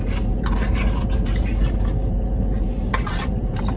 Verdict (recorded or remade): remade